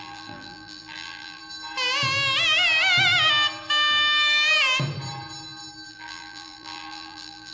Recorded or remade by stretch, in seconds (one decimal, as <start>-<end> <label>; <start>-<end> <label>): 0.0-1.4 remade; 1.4-5.9 recorded; 5.9-7.5 remade